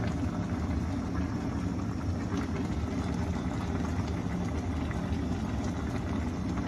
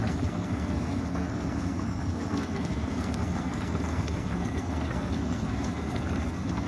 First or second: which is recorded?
first